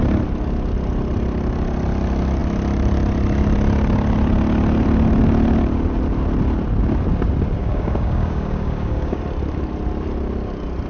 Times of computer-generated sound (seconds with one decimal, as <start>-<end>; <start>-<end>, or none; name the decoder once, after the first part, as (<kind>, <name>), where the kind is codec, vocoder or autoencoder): 7.6-9.2 (codec, DAC)